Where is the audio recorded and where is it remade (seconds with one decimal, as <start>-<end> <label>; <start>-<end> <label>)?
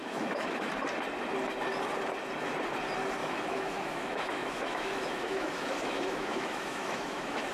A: 0.0-0.7 remade; 0.7-3.2 recorded; 3.2-7.5 remade